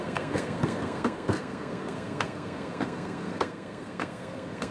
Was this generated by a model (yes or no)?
yes